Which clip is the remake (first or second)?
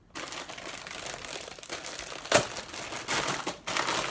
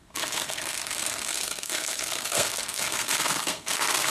second